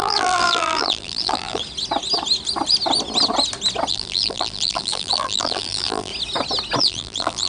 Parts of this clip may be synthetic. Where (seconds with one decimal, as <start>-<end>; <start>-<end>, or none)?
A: 0.0-1.6; 3.9-6.1; 6.8-7.5